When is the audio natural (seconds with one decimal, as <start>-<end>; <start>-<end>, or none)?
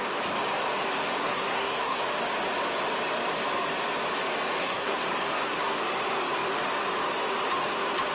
0.0-1.2; 2.0-4.6; 5.8-8.1